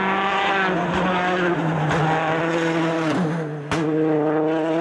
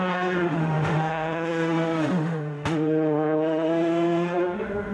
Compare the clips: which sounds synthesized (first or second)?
second